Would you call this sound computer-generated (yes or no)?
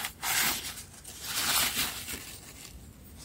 no